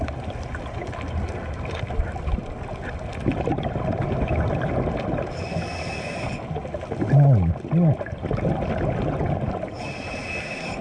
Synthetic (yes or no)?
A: no